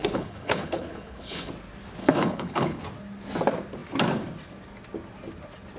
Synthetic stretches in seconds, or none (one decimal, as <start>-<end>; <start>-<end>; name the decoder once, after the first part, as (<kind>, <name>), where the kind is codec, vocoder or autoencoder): 0.0-1.5 (codec, HILCodec); 2.0-2.8

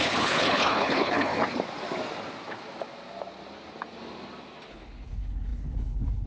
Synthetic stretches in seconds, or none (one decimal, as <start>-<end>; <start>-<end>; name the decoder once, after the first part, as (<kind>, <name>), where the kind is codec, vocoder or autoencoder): 0.0-1.3 (codec, HILCodec); 4.7-6.3

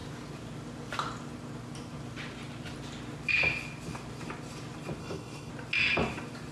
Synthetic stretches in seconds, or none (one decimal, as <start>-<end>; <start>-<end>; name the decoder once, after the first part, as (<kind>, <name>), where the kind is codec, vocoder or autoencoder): 5.0-5.5 (codec, HILCodec)

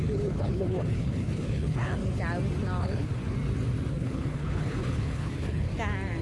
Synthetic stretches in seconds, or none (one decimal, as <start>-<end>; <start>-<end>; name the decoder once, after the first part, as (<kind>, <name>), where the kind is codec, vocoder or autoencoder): 0.0-2.0 (codec, HILCodec); 2.8-3.2; 3.9-5.7

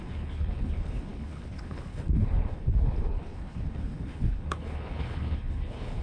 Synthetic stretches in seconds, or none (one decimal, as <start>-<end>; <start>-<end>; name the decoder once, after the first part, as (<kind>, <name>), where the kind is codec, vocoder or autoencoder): 0.0-6.0 (codec, HILCodec)